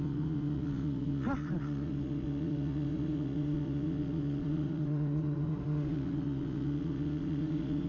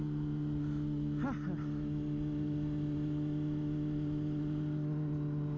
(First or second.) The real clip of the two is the second